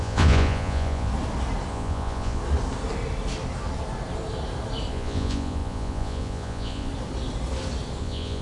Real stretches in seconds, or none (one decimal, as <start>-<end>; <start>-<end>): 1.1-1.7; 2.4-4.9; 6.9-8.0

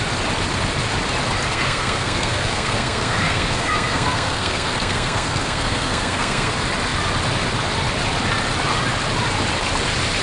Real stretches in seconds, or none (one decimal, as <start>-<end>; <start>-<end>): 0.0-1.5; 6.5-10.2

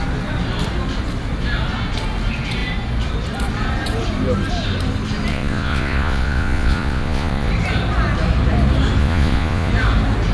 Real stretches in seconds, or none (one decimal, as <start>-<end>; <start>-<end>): 0.0-5.3; 7.5-9.0; 9.7-10.3

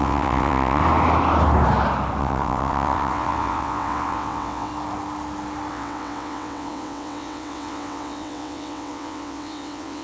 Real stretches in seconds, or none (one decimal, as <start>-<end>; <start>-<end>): 0.8-2.2; 4.7-5.7